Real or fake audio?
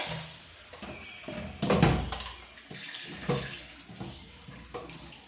real